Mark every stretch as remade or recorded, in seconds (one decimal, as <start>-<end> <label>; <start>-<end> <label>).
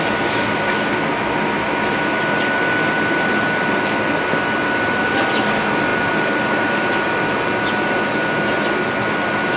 0.0-5.9 recorded; 5.9-7.1 remade; 7.1-9.6 recorded